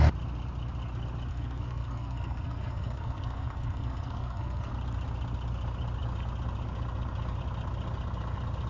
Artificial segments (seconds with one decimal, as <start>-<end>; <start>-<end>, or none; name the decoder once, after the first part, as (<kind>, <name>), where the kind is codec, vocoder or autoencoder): 1.3-4.7 (codec, SNAC)